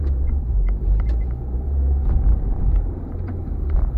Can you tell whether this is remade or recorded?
remade